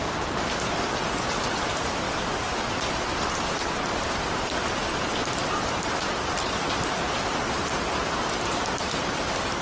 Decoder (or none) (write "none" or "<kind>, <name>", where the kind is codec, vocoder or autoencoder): none